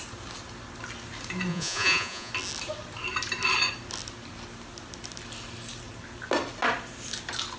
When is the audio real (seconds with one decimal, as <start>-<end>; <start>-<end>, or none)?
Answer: 0.0-1.5; 2.3-7.6